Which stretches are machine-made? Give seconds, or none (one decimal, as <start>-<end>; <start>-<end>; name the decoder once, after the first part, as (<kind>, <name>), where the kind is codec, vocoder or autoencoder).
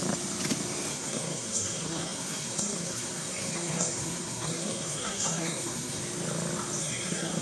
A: 0.9-6.0 (codec, SNAC); 6.8-7.4